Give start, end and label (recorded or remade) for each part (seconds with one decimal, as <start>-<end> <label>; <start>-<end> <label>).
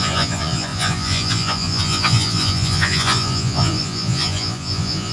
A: 0.0-5.1 remade